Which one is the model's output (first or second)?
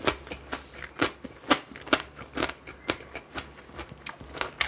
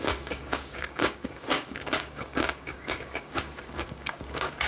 second